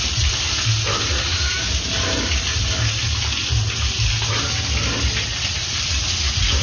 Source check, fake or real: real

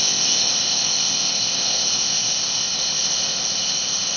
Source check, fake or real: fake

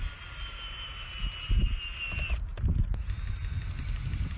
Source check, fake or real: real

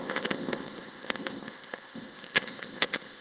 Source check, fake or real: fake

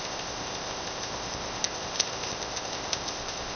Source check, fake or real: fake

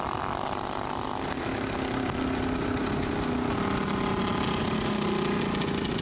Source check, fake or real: real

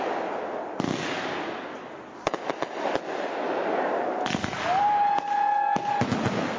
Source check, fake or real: real